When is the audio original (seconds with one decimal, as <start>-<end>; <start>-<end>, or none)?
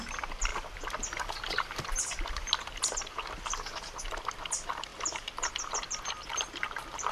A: 0.0-7.1